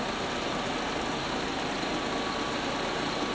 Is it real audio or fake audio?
real